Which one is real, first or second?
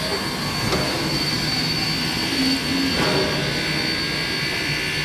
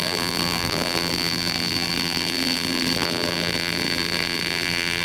first